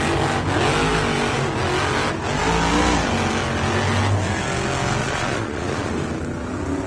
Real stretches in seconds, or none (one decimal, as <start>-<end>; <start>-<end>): 0.0-5.0; 5.9-6.9